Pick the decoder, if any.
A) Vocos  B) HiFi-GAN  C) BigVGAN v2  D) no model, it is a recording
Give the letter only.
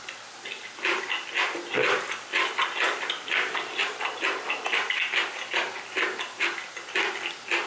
D